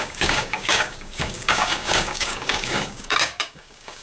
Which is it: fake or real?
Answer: fake